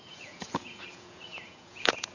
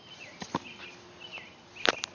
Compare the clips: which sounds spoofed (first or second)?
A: first